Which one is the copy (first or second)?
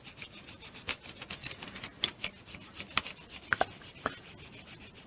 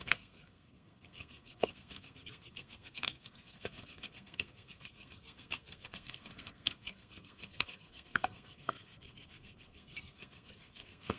second